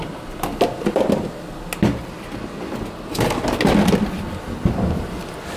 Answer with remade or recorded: recorded